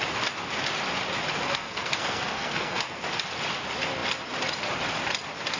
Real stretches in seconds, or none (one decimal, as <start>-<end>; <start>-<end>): 0.0-1.4; 3.0-5.6